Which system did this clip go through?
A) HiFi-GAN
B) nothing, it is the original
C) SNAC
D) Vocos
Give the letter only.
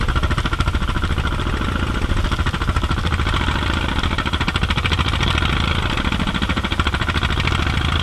B